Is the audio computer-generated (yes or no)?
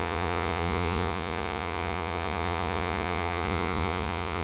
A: yes